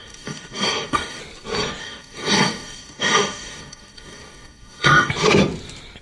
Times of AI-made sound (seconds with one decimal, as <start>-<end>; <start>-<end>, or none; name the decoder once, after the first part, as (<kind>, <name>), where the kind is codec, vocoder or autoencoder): 0.0-1.2 (codec, DAC); 1.8-5.1